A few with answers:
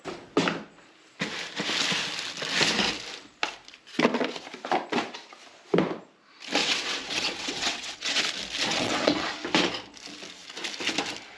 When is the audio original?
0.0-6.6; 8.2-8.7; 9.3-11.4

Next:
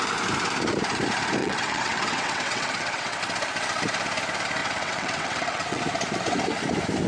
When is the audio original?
0.0-1.4; 3.2-4.6; 5.8-7.1

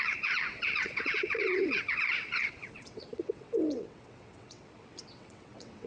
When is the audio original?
none

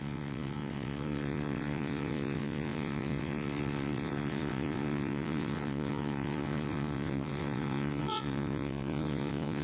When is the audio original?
none

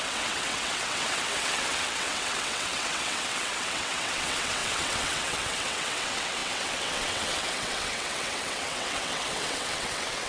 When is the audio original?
none

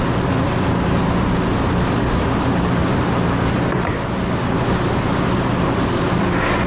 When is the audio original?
0.0-6.7

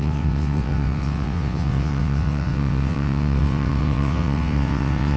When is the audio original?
none

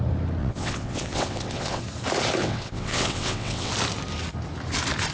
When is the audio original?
0.0-0.4; 1.8-2.4; 3.7-5.1